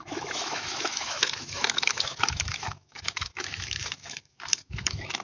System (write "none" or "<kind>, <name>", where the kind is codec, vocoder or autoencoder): autoencoder, DAC-VAE